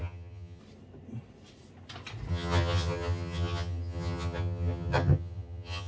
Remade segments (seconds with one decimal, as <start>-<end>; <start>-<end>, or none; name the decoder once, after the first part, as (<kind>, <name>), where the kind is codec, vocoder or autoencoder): 0.0-0.6 (vocoder, HiFi-GAN); 2.3-5.9